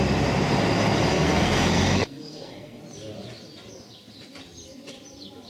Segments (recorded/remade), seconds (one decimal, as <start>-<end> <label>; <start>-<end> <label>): 0.0-1.1 recorded; 1.1-2.8 remade; 2.8-5.5 recorded